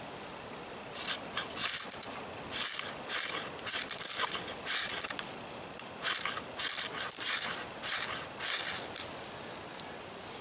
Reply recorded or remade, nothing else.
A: recorded